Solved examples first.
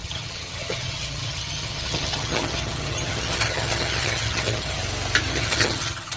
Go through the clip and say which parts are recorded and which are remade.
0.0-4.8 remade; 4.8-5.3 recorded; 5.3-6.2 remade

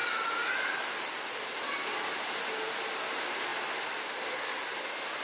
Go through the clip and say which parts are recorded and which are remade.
0.0-5.2 recorded

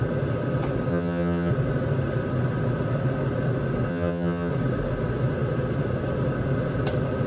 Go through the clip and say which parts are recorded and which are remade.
0.0-0.9 recorded; 0.9-1.5 remade; 1.5-3.9 recorded; 3.9-4.5 remade; 4.5-7.3 recorded

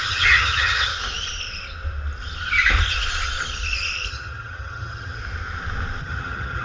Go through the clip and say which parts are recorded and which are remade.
0.0-0.9 remade; 0.9-4.1 recorded; 4.1-5.2 remade; 5.2-6.0 recorded; 6.0-6.6 remade

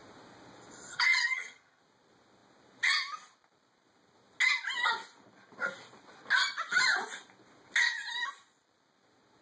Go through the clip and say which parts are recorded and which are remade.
0.0-0.9 recorded; 0.9-1.8 remade; 1.8-9.4 recorded

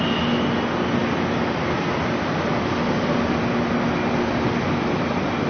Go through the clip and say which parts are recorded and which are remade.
0.0-5.5 recorded

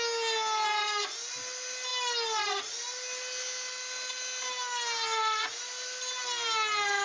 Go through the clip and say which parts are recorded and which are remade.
0.0-7.0 recorded

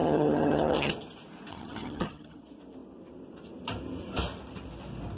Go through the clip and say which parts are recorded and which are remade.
0.0-0.9 remade; 0.9-1.5 recorded; 1.5-2.4 remade; 2.4-5.2 recorded